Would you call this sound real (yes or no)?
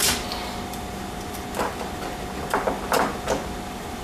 yes